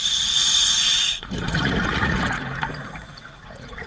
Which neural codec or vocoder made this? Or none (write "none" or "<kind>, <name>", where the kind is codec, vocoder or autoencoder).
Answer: vocoder, Vocos